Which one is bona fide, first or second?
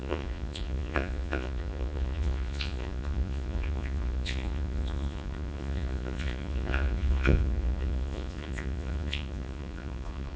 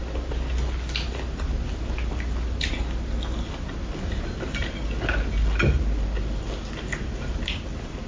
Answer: second